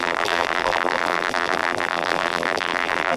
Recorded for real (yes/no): no